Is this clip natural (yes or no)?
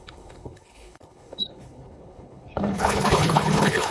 no